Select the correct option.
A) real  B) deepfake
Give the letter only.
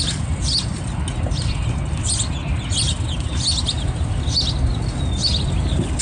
A